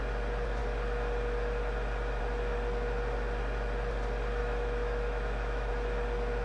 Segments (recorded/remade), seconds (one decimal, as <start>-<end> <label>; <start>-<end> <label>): 0.0-4.4 recorded; 4.4-5.7 remade; 5.7-6.4 recorded